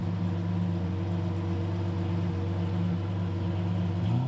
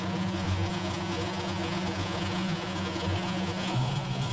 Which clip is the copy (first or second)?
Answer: second